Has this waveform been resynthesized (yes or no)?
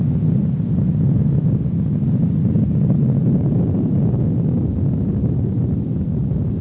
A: no